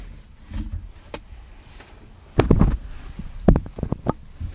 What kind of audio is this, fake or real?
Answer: real